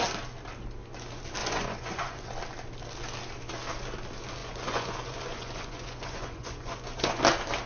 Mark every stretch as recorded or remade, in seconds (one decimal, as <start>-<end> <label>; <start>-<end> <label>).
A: 0.0-1.4 recorded; 1.4-2.3 remade; 2.3-4.4 recorded; 4.4-7.2 remade; 7.2-7.7 recorded